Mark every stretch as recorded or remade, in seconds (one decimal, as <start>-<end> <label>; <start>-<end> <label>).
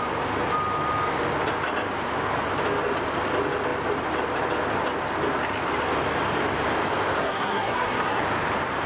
0.0-7.2 recorded; 7.2-8.2 remade; 8.2-8.9 recorded